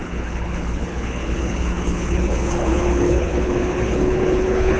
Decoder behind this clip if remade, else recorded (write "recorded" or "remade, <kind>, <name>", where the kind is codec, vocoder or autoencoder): remade, codec, HILCodec